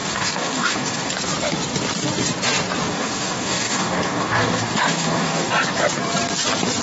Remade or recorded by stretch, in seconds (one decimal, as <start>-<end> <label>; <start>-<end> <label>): 0.0-1.1 remade; 1.1-2.8 recorded; 2.8-5.5 remade; 5.5-6.8 recorded